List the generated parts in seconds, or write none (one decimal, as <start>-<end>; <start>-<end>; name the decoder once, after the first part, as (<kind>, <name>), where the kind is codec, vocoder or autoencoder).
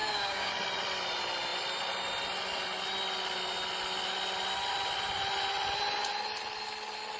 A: 0.0-0.5 (codec, DAC)